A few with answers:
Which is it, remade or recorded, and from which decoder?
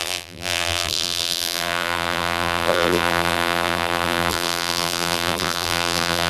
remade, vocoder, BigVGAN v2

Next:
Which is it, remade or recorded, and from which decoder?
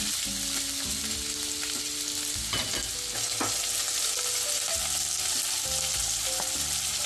recorded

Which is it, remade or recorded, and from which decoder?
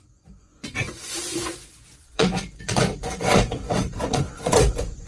remade, vocoder, Vocos